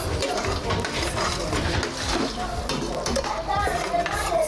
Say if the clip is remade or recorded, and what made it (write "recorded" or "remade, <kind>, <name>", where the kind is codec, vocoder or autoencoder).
recorded